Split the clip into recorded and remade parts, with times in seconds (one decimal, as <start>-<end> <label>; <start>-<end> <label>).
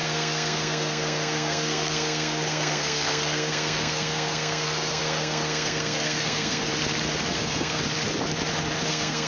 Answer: 0.0-6.7 remade; 6.7-7.3 recorded; 7.3-7.8 remade; 7.8-8.9 recorded; 8.9-9.3 remade